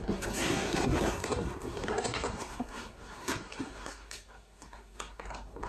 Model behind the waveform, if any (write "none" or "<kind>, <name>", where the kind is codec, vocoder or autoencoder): codec, SNAC